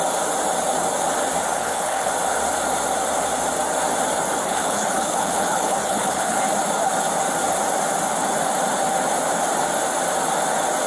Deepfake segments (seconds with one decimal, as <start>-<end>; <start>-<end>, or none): 1.6-2.1; 4.4-6.4